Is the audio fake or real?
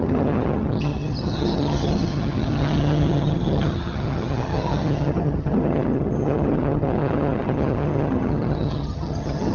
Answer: fake